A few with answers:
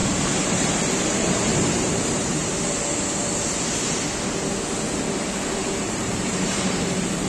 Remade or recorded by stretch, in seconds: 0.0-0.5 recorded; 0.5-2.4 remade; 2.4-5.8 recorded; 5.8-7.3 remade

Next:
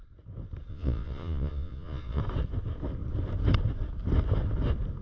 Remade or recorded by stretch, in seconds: 0.0-0.7 recorded; 0.7-2.2 remade; 2.2-5.0 recorded

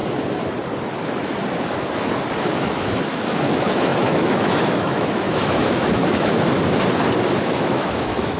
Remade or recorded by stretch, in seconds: 0.0-2.4 recorded; 2.4-6.3 remade; 6.3-7.4 recorded; 7.4-8.4 remade

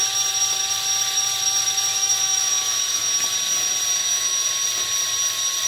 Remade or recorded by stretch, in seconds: 0.0-1.9 recorded; 1.9-3.1 remade; 3.1-4.0 recorded; 4.0-4.5 remade; 4.5-5.7 recorded

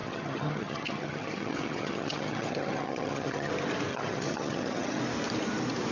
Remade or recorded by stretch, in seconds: 0.0-3.5 remade; 3.5-3.9 recorded; 3.9-5.0 remade; 5.0-5.9 recorded

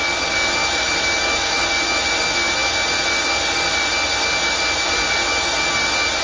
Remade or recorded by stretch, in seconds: 0.0-0.6 recorded; 0.6-1.6 remade; 1.6-6.2 recorded

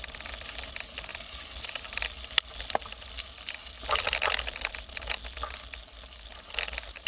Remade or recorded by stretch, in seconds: 0.0-1.1 recorded; 1.1-4.7 remade; 4.7-7.1 recorded

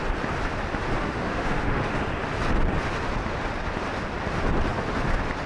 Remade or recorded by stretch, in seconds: 0.0-1.0 recorded; 1.0-2.0 remade; 2.0-5.5 recorded